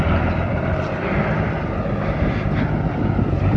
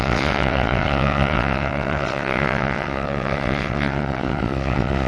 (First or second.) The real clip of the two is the first